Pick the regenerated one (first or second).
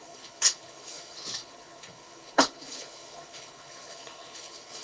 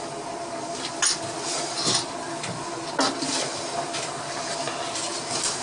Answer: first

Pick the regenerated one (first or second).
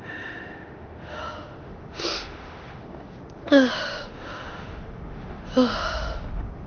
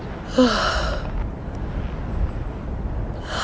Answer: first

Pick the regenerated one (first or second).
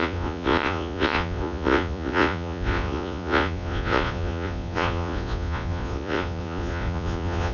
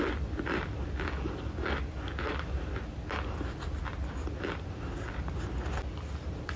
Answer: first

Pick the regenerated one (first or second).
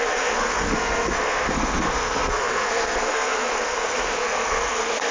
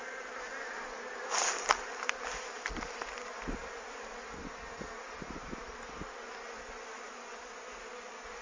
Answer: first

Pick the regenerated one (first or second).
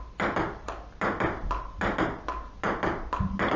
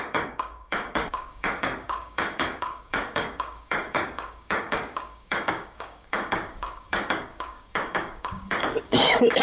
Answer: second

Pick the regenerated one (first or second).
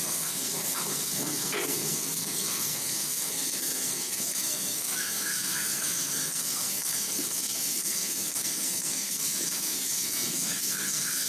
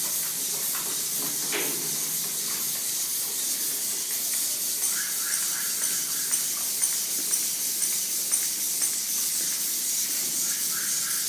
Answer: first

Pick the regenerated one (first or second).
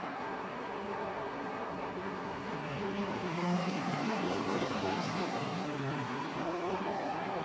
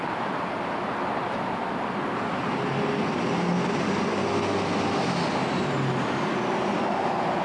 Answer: first